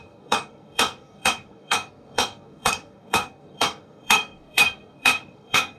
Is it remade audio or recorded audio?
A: remade